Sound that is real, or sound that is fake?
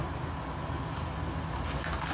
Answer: real